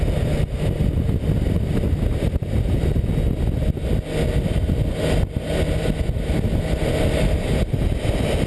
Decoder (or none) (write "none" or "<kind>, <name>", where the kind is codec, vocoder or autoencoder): none